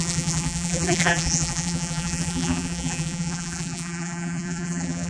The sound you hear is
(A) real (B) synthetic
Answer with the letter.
B